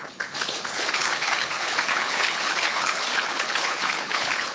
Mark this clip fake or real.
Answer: fake